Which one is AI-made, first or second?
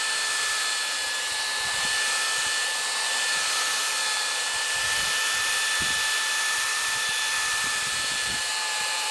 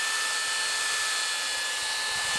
first